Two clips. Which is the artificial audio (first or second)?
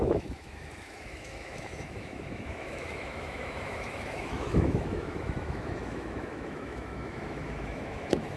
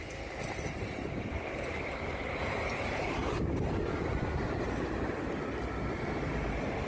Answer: first